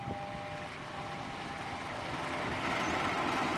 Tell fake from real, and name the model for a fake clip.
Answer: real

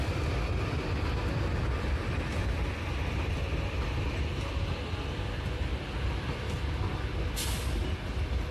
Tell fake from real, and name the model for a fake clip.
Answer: real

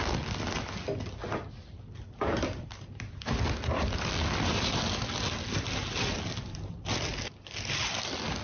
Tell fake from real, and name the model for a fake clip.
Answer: real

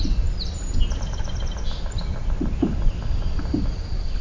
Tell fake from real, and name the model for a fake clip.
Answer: real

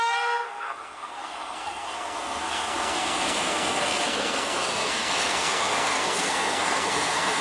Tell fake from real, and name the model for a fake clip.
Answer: fake, codec, SNAC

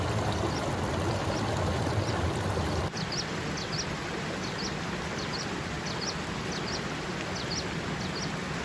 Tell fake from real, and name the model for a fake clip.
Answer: real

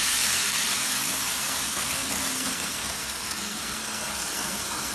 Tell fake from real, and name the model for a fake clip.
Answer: fake, codec, SNAC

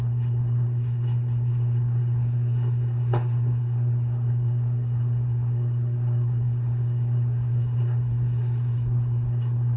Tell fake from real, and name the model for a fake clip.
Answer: fake, codec, SNAC